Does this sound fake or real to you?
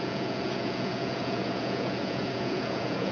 fake